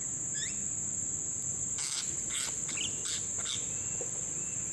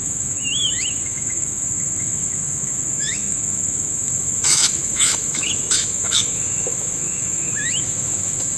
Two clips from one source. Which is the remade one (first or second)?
second